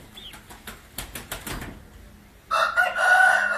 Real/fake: real